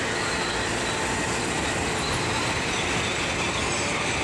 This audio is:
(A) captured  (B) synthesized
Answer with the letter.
A